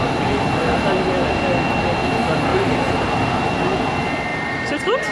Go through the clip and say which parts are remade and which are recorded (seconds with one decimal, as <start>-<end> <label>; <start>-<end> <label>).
0.0-2.5 recorded; 2.5-3.1 remade; 3.1-4.3 recorded; 4.3-5.1 remade

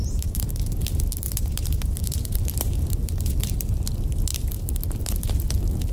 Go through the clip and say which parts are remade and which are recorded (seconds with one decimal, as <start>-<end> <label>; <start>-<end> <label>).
0.0-3.5 remade; 3.5-4.3 recorded; 4.3-5.2 remade; 5.2-5.9 recorded

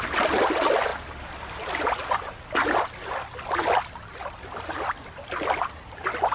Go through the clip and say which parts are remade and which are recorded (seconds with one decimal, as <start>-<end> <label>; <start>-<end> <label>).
0.0-6.3 recorded

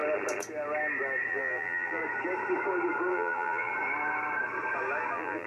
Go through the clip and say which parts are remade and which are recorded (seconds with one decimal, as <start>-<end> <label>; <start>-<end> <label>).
0.0-1.3 recorded; 1.3-2.0 remade; 2.0-3.1 recorded; 3.1-3.7 remade; 3.7-5.1 recorded; 5.1-5.5 remade

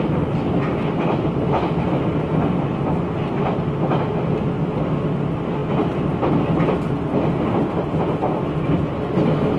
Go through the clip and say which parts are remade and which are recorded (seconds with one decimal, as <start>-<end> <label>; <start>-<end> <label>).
0.0-9.6 recorded

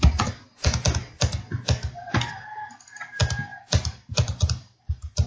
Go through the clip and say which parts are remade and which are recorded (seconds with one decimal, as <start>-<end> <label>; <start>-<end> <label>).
0.0-3.5 recorded; 3.5-4.8 remade; 4.8-5.3 recorded